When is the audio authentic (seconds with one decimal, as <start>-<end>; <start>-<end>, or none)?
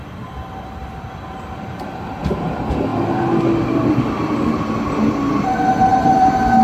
0.0-5.9